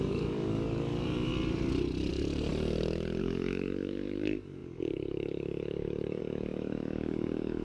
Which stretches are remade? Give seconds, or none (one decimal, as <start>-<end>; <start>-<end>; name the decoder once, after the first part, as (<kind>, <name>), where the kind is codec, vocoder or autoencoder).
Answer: 0.0-1.3 (codec, DAC); 2.1-2.5; 3.2-7.6